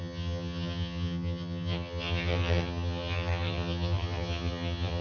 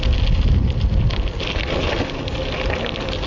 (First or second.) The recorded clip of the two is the second